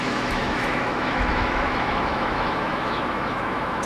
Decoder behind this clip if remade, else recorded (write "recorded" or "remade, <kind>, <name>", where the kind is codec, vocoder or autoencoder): remade, autoencoder, DAC-VAE